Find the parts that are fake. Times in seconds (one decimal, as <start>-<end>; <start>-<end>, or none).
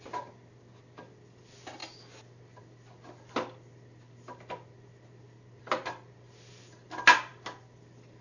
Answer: none